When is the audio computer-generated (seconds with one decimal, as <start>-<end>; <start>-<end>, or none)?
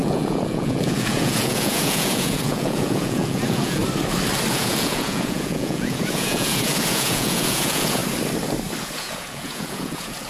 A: 0.0-3.8; 4.5-8.0; 8.8-10.3